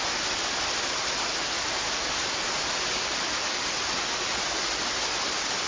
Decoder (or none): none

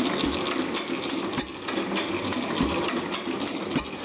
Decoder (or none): none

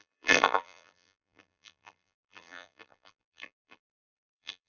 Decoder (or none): vocoder, BigVGAN v2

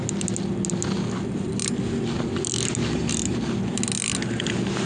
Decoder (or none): none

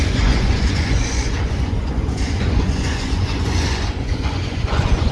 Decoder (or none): vocoder, Vocos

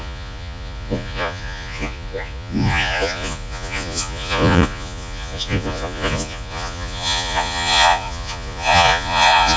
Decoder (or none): vocoder, Vocos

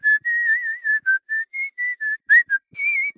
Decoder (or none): vocoder, BigVGAN v2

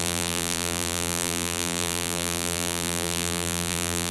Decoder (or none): vocoder, BigVGAN v2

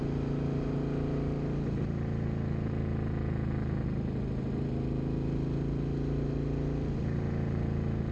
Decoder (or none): none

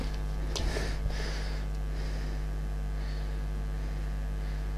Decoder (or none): none